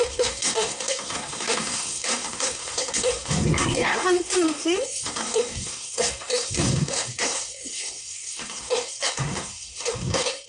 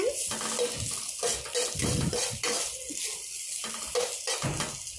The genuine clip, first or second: second